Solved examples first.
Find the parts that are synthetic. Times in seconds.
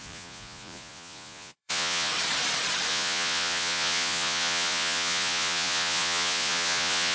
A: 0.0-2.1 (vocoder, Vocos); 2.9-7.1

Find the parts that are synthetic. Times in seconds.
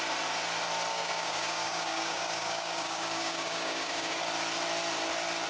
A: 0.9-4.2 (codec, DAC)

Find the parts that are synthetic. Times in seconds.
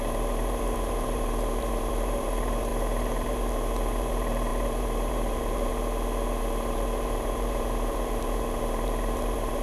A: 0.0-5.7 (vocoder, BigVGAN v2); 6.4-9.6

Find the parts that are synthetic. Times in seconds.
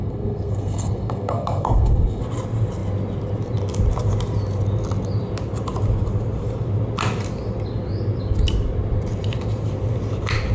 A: 0.0-2.2 (codec, SNAC)